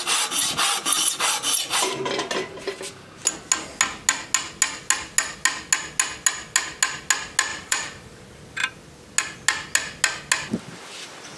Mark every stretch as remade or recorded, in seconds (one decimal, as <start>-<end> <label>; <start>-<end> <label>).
0.0-7.5 recorded; 7.5-8.2 remade; 8.2-8.6 recorded; 8.6-9.1 remade; 9.1-11.4 recorded

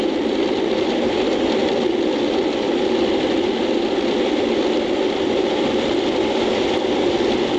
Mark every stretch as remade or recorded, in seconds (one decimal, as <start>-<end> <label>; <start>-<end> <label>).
0.0-7.6 recorded

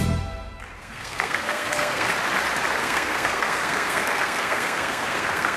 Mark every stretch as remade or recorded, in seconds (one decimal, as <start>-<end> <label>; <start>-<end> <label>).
0.0-0.8 recorded; 0.8-2.1 remade; 2.1-2.8 recorded; 2.8-5.6 remade